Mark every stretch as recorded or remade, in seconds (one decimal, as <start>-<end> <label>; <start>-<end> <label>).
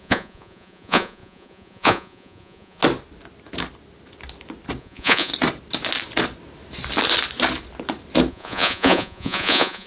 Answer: 0.0-2.8 remade; 2.8-4.8 recorded; 4.8-5.3 remade; 5.3-8.3 recorded; 8.3-9.9 remade